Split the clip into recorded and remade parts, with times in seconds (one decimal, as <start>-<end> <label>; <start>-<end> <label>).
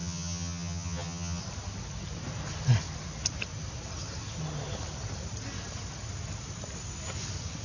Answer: 0.0-1.4 remade; 1.4-7.6 recorded